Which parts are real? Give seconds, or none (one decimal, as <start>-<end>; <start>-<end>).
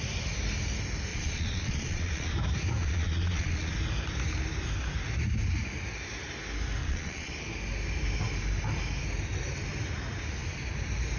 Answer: 0.0-1.1; 2.3-2.8; 3.7-6.8; 7.3-11.2